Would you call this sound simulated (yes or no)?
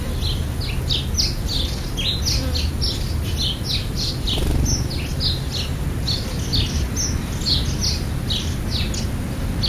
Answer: no